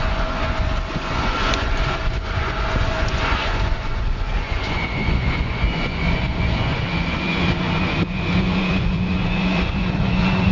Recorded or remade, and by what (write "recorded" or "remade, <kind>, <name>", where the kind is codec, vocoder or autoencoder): remade, vocoder, Vocos